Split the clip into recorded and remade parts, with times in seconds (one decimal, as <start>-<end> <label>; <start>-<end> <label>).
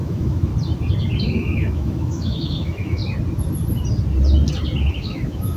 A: 0.0-0.5 remade; 0.5-1.2 recorded; 1.2-3.0 remade; 3.0-4.9 recorded; 4.9-5.6 remade